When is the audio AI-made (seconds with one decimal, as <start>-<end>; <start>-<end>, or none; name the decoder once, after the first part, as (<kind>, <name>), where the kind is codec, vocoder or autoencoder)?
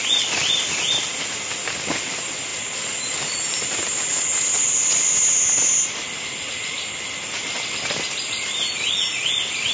none